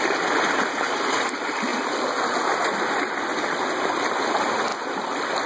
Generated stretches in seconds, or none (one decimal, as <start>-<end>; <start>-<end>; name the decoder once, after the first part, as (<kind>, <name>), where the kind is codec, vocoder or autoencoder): none